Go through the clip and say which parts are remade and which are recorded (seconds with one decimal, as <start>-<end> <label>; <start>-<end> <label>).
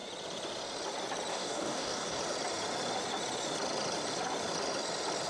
0.0-1.3 recorded; 1.3-2.2 remade; 2.2-5.3 recorded